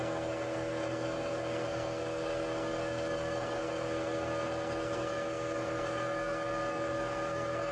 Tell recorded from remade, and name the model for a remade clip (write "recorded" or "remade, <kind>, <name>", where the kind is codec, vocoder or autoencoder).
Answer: remade, codec, SNAC